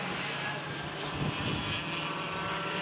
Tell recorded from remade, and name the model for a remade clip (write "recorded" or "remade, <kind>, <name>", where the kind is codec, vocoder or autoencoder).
recorded